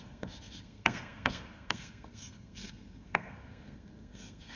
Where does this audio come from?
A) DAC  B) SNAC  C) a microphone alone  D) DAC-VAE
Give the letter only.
B